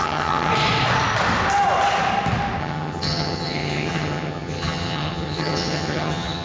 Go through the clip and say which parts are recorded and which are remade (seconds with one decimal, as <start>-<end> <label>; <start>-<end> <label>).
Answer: 0.0-0.5 remade; 0.5-2.6 recorded; 2.6-6.4 remade